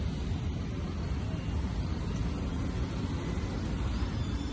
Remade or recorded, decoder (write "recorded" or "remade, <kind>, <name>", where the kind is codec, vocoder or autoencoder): recorded